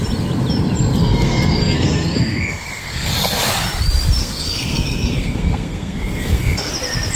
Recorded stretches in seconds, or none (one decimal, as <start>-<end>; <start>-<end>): 0.0-1.0; 3.1-4.2; 6.7-7.2